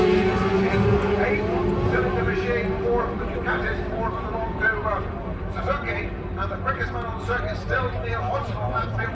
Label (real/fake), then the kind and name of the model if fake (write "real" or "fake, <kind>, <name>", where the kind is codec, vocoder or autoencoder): real